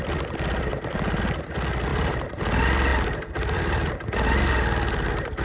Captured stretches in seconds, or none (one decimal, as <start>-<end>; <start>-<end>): 0.0-0.7; 1.2-1.9; 2.4-2.9; 3.9-5.4